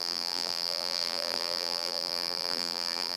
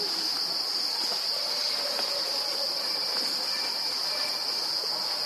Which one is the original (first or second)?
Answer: second